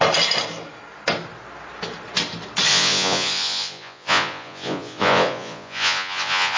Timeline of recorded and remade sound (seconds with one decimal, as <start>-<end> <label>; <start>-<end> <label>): 0.0-2.7 recorded; 2.7-6.6 remade